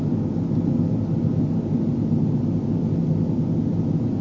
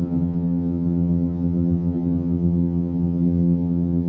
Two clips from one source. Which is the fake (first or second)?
second